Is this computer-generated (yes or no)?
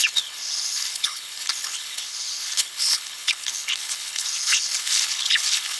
yes